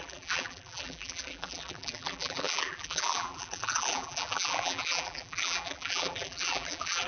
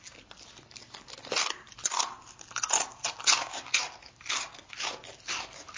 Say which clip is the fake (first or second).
first